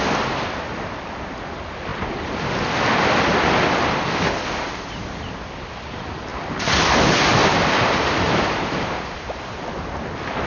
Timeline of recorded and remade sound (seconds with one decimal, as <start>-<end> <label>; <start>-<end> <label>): 0.0-6.3 recorded; 6.3-6.8 remade; 6.8-7.4 recorded; 7.4-9.7 remade; 9.7-10.5 recorded